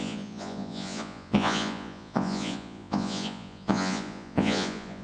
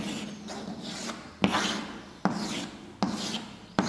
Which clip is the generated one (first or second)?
first